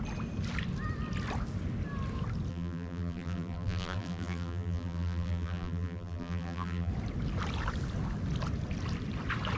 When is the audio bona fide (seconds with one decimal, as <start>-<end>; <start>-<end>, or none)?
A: 0.0-2.5; 6.9-9.6